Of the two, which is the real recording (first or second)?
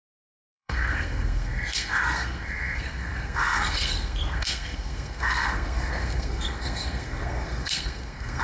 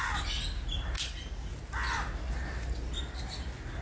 second